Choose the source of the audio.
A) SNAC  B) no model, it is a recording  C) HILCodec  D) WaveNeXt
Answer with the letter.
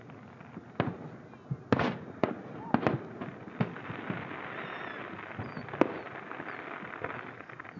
B